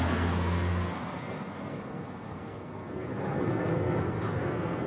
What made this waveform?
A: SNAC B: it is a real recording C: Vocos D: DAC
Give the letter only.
A